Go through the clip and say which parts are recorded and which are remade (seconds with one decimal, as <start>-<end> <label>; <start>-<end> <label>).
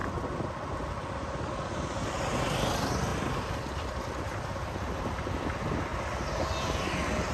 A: 0.0-7.3 recorded